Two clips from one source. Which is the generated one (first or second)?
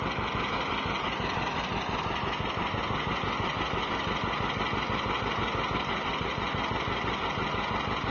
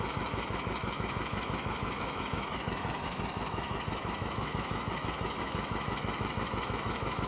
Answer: second